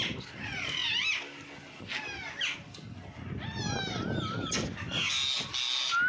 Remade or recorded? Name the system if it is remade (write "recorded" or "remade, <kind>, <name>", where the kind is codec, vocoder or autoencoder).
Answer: recorded